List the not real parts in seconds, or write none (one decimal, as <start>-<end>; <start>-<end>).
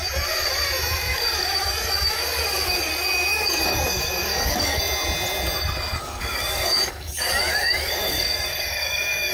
1.1-2.9; 3.3-4.8; 6.0-9.3